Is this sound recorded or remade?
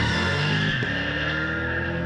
remade